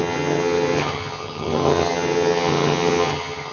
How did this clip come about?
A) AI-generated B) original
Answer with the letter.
A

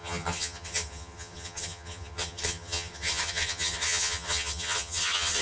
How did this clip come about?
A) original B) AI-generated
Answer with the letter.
B